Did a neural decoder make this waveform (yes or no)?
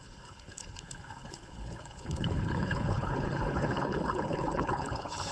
yes